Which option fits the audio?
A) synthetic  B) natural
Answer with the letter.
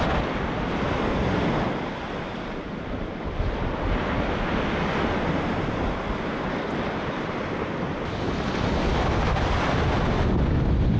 B